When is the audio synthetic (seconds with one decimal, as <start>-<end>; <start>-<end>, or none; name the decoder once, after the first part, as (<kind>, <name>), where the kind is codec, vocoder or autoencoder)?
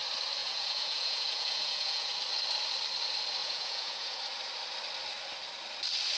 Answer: 0.4-2.1 (vocoder, Vocos); 3.4-4.2